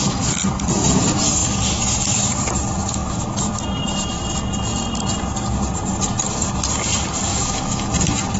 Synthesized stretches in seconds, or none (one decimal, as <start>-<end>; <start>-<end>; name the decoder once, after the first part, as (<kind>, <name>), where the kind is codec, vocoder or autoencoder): 3.0-3.5 (autoencoder, DAC-VAE); 7.3-7.9